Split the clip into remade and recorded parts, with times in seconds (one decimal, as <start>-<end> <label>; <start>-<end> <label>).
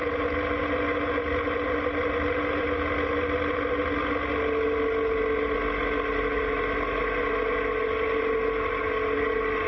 0.0-9.7 recorded